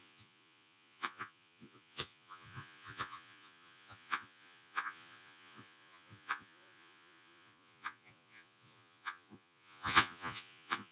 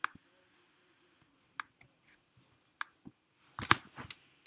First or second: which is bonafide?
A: second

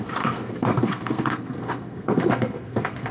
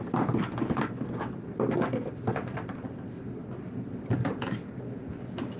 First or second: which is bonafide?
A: second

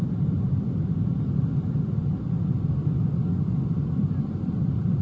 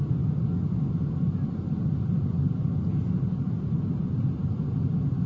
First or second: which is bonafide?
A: second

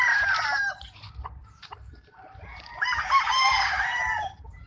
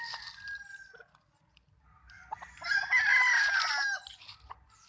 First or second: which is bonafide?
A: second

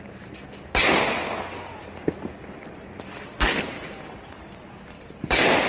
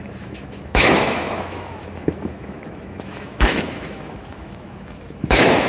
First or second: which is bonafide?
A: first